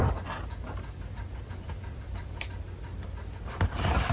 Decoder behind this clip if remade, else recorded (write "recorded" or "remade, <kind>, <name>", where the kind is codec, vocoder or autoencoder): recorded